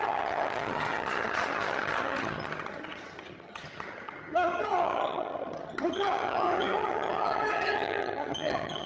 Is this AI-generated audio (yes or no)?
yes